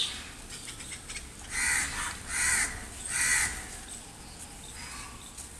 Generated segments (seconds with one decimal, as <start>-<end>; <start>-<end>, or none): none